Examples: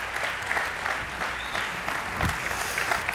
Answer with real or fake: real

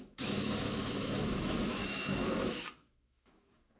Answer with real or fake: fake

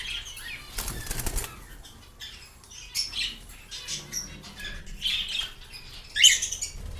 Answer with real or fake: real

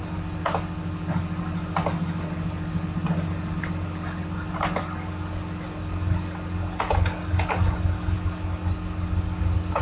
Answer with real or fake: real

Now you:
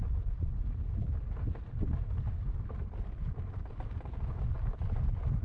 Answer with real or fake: real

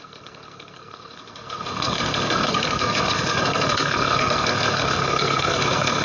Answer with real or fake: fake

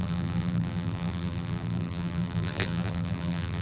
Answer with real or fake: fake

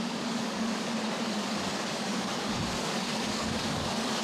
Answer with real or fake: fake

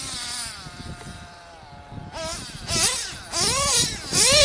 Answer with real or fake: real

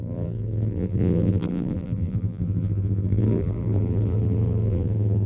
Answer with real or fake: fake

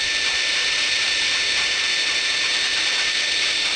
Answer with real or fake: fake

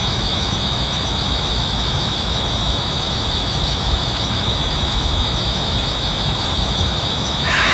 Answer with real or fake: fake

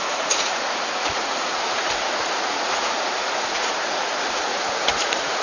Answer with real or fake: fake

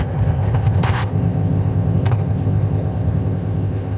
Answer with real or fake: fake